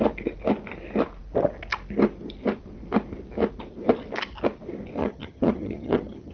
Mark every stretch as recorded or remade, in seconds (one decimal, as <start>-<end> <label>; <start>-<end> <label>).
0.0-5.0 recorded; 5.0-6.3 remade